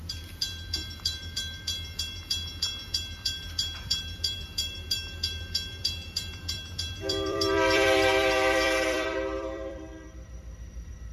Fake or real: fake